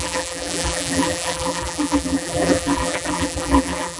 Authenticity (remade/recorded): remade